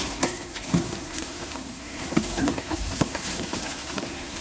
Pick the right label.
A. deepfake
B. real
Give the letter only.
A